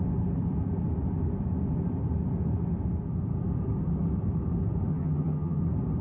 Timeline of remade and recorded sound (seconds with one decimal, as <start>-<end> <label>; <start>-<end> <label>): 0.0-4.9 recorded; 4.9-5.6 remade; 5.6-6.0 recorded